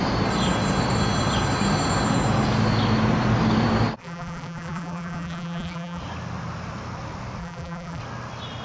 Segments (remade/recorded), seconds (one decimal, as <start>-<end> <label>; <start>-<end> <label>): 0.0-4.0 recorded; 4.0-6.0 remade; 6.0-7.4 recorded; 7.4-8.0 remade; 8.0-8.6 recorded